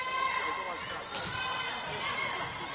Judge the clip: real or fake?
real